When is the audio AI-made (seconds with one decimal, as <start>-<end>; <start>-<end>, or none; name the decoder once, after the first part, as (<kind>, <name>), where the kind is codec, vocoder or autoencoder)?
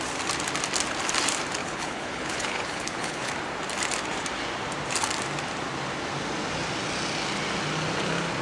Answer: 1.6-3.3 (codec, HILCodec)